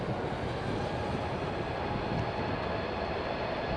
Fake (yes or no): no